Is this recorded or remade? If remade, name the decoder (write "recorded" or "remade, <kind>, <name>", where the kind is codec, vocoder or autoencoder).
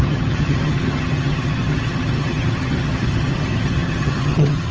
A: remade, vocoder, HiFi-GAN